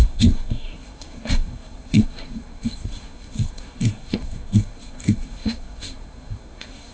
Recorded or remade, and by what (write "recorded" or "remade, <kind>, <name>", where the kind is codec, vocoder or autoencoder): remade, codec, SNAC